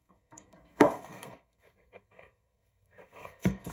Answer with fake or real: fake